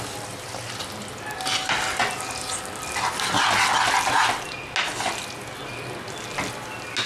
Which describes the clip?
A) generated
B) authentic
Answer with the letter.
B